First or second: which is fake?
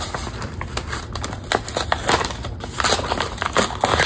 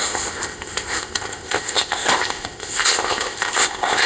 second